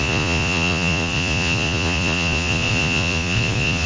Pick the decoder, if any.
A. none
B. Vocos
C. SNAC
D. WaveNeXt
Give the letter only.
B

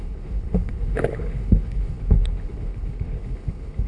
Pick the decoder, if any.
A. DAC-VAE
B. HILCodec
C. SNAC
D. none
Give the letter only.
B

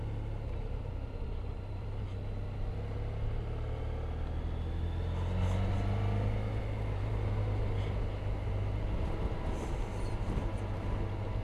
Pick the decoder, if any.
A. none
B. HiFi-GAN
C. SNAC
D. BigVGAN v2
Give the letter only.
A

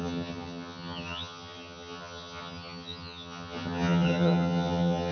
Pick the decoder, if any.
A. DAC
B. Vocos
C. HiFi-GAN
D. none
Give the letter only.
C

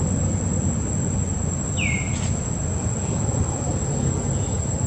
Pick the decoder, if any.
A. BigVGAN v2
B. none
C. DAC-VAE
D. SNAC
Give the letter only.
B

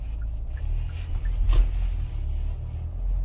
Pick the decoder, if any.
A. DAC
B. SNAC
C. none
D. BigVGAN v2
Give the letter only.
C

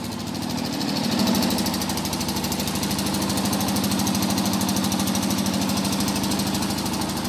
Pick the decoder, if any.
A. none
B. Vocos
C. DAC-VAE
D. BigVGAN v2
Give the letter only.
A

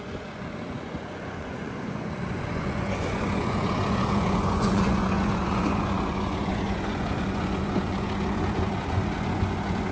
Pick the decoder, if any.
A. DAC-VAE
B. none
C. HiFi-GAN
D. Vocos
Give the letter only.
D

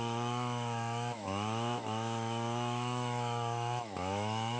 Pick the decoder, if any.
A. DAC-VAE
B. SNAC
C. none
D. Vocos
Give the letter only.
A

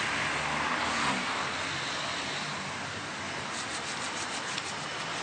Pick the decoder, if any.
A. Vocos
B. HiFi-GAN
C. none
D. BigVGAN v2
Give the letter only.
C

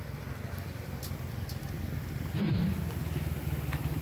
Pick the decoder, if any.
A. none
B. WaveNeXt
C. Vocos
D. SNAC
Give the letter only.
A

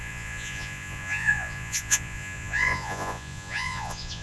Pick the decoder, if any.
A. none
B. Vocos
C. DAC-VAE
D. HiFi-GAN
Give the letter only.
B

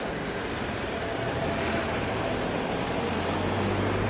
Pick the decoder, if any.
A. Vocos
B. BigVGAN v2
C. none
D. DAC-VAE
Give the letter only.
C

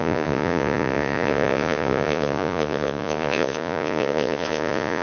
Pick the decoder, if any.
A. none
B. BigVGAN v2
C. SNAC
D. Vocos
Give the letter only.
D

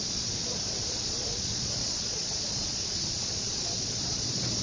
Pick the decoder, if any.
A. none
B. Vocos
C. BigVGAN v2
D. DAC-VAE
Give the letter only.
B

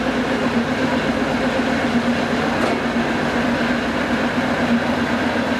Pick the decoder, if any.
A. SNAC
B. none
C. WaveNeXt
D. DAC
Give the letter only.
B